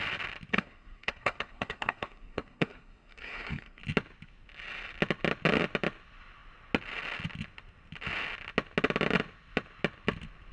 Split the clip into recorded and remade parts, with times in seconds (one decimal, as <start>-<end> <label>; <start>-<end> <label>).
0.0-0.5 recorded; 0.5-3.8 remade; 3.8-10.5 recorded